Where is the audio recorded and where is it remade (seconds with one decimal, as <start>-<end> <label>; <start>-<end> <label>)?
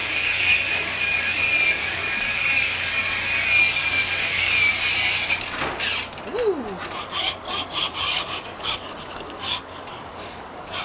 0.0-3.1 remade; 3.1-3.6 recorded; 3.6-4.7 remade; 4.7-7.0 recorded; 7.0-10.8 remade